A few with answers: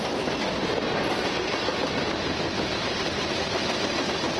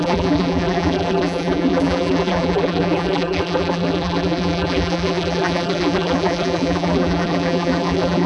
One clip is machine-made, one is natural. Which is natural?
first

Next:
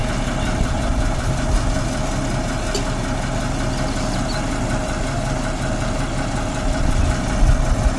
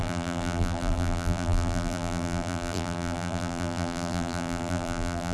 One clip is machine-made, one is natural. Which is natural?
first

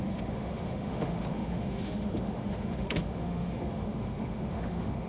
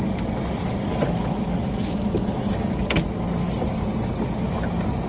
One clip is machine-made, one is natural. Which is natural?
second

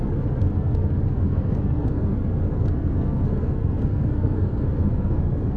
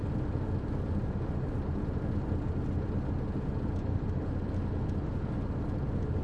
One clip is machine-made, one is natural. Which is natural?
second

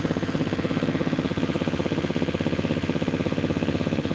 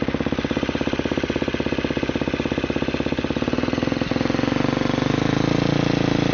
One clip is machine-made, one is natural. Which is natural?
second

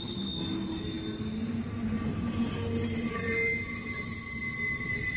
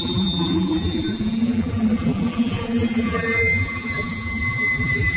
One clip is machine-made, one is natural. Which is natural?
first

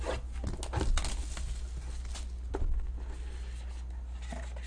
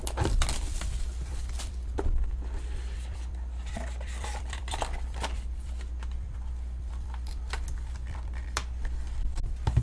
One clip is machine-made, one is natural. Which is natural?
first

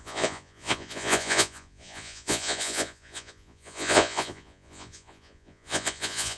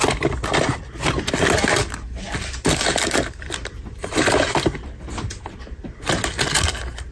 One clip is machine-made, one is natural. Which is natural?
second